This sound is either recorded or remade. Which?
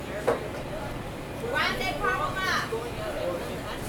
recorded